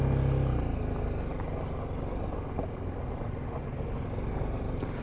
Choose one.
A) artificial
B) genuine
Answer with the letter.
B